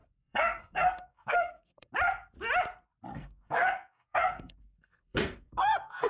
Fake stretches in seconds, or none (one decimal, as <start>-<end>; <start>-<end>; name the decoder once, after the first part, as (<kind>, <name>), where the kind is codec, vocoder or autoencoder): 0.0-1.9 (codec, SNAC); 3.1-6.1